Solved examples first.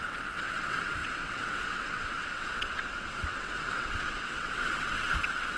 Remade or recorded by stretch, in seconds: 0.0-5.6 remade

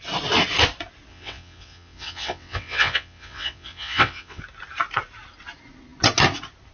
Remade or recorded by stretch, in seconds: 0.0-1.1 recorded; 1.1-4.4 remade; 4.4-6.7 recorded

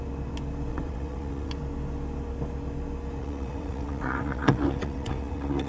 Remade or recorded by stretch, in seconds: 0.0-0.7 recorded; 0.7-1.5 remade; 1.5-3.2 recorded; 3.2-5.7 remade

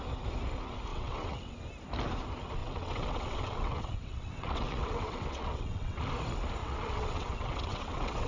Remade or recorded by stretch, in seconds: 0.0-0.9 recorded; 0.9-1.6 remade; 1.6-2.6 recorded; 2.6-6.0 remade; 6.0-6.6 recorded; 6.6-8.3 remade

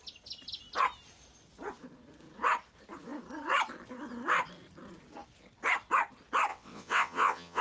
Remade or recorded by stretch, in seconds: 0.0-6.5 recorded; 6.5-7.6 remade

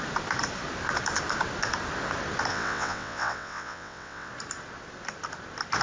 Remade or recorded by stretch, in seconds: 0.0-2.5 recorded; 2.5-4.3 remade; 4.3-5.8 recorded